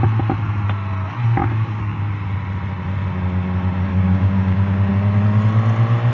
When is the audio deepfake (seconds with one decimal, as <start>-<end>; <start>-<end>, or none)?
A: 1.4-2.1; 3.9-4.9